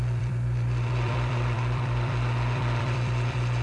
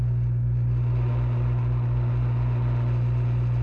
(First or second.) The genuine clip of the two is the second